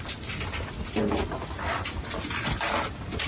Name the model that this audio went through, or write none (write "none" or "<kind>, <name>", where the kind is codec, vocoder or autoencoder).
vocoder, BigVGAN v2